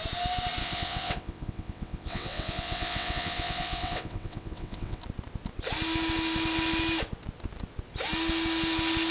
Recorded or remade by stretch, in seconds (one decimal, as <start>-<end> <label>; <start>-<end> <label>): 0.0-0.6 recorded; 0.6-5.0 remade; 5.0-9.1 recorded